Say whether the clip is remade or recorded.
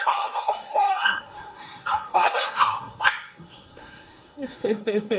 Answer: remade